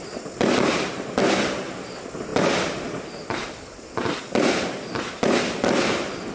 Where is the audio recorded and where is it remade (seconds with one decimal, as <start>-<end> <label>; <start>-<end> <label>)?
0.0-6.3 recorded